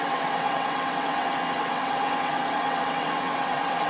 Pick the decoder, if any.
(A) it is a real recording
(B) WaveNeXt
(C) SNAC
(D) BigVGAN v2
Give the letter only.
B